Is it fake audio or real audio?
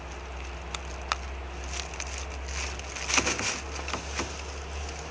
real